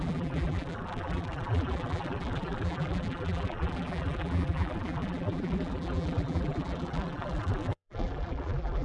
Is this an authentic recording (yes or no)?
no